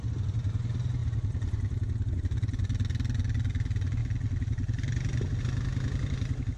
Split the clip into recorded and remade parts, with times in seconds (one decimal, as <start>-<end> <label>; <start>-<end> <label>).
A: 0.0-6.6 recorded